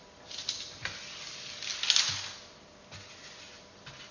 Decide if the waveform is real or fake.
real